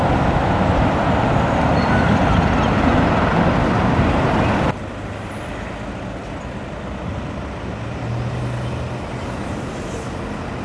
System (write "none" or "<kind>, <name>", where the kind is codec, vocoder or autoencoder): none